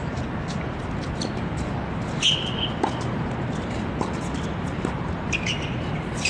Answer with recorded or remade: recorded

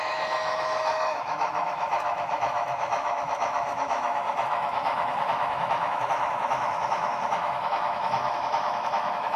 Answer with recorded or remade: remade